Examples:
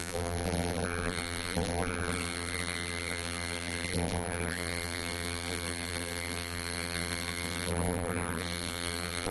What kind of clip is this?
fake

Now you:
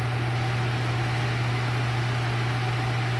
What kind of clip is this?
real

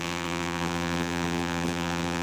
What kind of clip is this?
fake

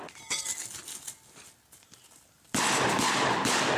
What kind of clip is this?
real